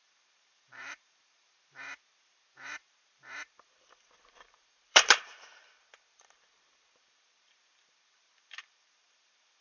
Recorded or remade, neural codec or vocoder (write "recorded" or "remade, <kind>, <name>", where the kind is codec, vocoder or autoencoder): remade, vocoder, BigVGAN v2